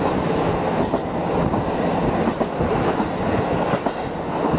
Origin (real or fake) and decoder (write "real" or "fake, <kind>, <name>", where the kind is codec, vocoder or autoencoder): real